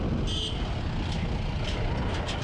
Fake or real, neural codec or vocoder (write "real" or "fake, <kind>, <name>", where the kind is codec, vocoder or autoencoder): real